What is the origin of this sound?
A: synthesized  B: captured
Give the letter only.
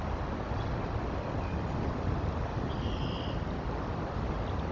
B